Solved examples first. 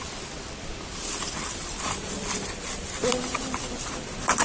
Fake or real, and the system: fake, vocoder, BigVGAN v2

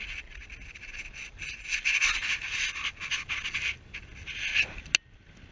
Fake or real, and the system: real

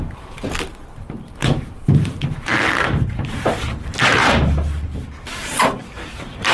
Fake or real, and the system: fake, vocoder, BigVGAN v2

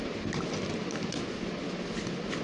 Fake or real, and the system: real